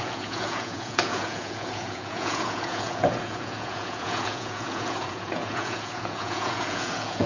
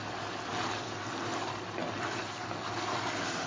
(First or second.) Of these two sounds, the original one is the second